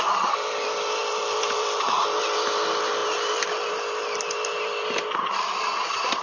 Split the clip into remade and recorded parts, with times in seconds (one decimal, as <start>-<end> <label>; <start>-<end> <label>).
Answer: 0.0-6.2 recorded

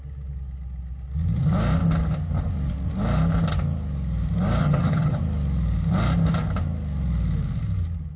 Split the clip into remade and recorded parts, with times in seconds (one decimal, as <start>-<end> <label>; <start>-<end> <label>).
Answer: 0.0-4.6 recorded; 4.6-5.2 remade; 5.2-8.2 recorded

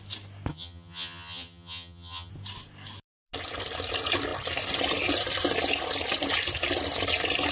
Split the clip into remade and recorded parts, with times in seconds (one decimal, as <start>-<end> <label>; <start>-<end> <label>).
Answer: 0.0-0.5 recorded; 0.5-2.3 remade; 2.3-7.5 recorded

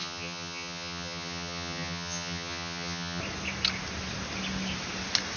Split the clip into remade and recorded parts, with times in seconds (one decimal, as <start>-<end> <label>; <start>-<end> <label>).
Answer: 0.0-3.2 remade; 3.2-5.4 recorded

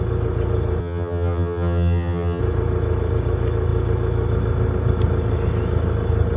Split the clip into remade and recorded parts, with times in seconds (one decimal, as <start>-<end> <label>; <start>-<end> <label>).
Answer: 0.0-0.8 recorded; 0.8-2.4 remade; 2.4-6.4 recorded

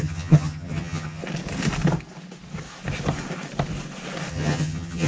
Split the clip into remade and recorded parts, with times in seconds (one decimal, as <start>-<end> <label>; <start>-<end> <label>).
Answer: 0.0-1.2 remade; 1.2-4.3 recorded; 4.3-5.1 remade

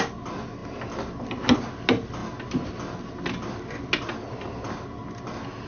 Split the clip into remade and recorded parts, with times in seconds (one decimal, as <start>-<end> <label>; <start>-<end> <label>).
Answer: 0.0-5.7 recorded